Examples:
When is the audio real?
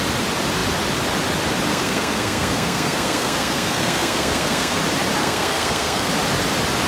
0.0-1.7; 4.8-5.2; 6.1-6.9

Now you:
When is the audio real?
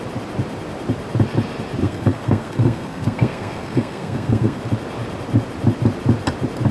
0.0-1.8; 4.6-6.7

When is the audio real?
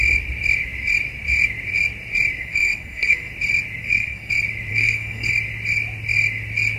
0.0-2.4; 3.3-3.8; 4.3-4.7; 5.3-6.8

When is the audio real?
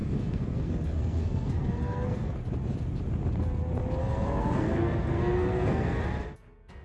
2.4-4.0; 6.0-6.8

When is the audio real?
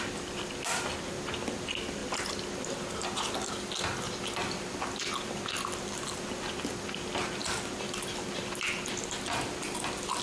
0.0-10.2